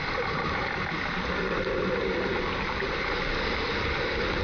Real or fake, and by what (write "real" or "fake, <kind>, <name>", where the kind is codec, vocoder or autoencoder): real